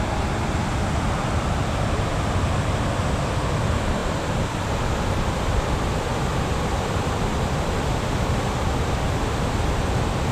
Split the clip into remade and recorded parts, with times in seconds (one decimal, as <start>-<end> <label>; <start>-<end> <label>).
0.0-10.3 recorded